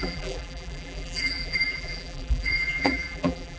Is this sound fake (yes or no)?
yes